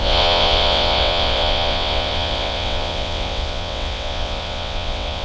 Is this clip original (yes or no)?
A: no